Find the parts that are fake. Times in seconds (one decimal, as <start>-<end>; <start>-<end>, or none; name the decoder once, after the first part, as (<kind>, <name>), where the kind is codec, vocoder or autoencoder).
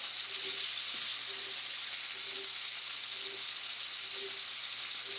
0.0-1.1 (vocoder, BigVGAN v2); 4.2-5.2